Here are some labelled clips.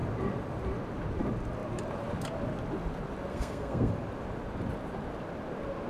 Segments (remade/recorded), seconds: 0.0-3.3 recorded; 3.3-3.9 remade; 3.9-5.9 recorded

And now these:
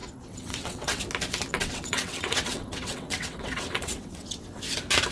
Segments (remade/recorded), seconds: 0.0-1.0 remade; 1.0-1.5 recorded; 1.5-4.6 remade; 4.6-5.1 recorded

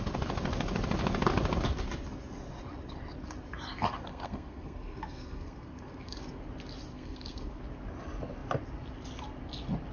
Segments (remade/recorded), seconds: 0.0-4.1 recorded; 4.1-6.4 remade; 6.4-6.9 recorded; 6.9-7.6 remade; 7.6-9.9 recorded